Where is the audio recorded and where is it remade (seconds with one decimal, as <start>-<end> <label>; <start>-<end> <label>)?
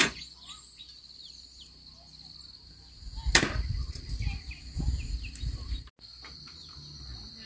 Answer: 0.0-0.8 remade; 0.8-7.5 recorded